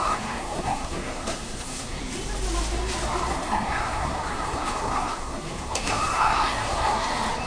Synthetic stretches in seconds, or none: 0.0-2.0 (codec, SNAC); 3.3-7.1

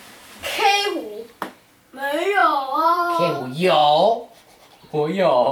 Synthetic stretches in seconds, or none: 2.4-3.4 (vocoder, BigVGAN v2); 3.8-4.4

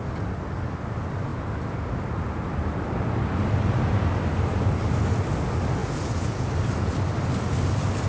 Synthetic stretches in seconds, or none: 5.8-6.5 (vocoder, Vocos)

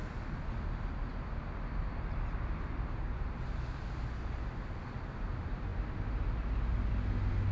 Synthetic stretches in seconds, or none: none

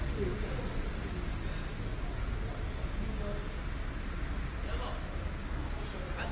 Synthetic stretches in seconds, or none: 5.4-6.3 (vocoder, BigVGAN v2)

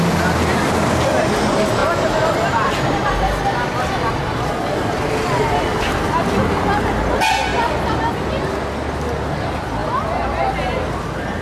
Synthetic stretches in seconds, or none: none

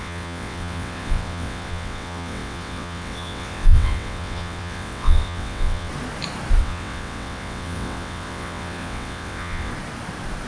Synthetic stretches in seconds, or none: 0.0-5.9 (vocoder, WaveNeXt); 6.6-9.7